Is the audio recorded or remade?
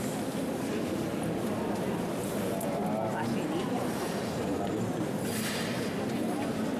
recorded